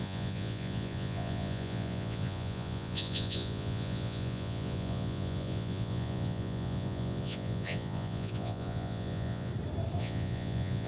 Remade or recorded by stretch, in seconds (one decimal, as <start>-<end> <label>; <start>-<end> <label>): 0.0-9.5 remade; 9.5-10.0 recorded; 10.0-10.9 remade